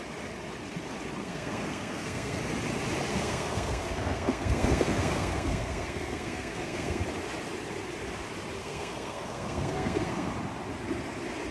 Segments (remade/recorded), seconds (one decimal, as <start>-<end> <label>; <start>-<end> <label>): 0.0-1.2 recorded; 1.2-2.4 remade; 2.4-3.1 recorded; 3.1-7.0 remade; 7.0-8.6 recorded; 8.6-10.3 remade; 10.3-11.5 recorded